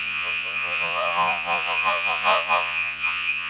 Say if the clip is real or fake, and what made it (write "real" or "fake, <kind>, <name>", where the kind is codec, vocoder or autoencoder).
fake, vocoder, Vocos